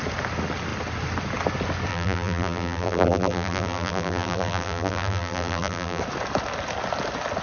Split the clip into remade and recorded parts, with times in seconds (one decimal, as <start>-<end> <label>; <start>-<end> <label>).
0.0-1.9 recorded; 1.9-6.0 remade; 6.0-7.4 recorded